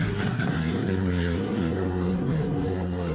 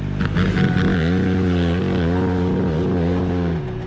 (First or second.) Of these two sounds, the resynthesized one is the first